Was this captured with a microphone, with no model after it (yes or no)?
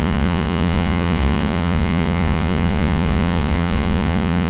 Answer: no